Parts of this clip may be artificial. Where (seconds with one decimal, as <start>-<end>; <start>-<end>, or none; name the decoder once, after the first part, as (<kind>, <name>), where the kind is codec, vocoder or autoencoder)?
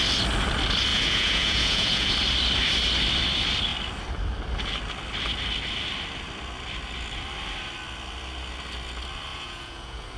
0.9-2.1 (vocoder, Vocos); 9.3-10.2